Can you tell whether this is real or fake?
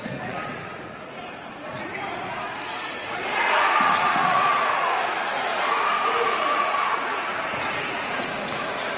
fake